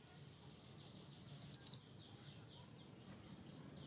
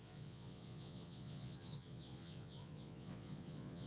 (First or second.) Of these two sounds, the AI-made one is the second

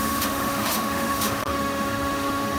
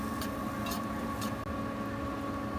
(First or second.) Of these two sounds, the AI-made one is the first